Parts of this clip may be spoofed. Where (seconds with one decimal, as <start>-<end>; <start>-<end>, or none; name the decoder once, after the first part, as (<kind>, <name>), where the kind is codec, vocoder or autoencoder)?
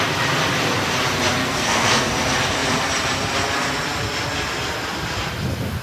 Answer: 1.4-2.1 (codec, SNAC)